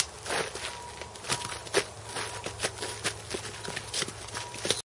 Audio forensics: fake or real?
real